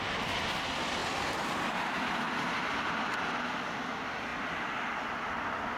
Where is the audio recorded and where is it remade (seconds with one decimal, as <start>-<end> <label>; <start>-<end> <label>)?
0.0-5.8 recorded